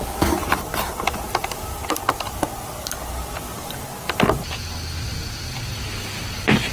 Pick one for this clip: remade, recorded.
recorded